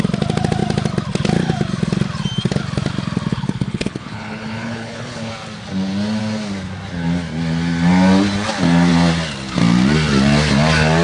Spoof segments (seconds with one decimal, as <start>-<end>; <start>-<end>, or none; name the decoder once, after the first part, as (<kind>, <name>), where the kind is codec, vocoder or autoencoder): 3.3-5.3 (codec, HILCodec)